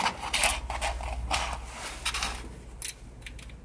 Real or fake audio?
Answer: real